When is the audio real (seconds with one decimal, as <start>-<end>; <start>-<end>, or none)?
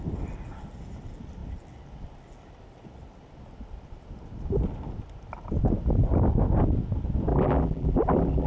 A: 0.0-7.3